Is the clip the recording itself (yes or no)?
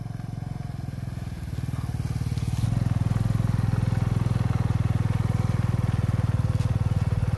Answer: yes